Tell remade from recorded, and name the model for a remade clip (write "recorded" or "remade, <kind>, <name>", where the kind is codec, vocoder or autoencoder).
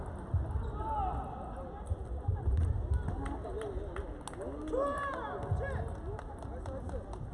recorded